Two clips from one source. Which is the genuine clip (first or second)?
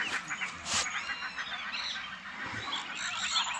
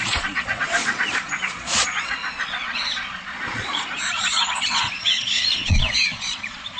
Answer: first